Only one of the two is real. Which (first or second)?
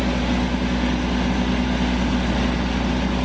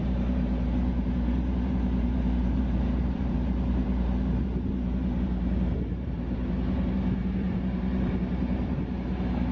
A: first